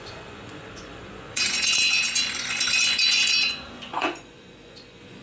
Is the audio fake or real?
fake